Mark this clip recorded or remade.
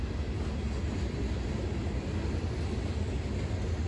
recorded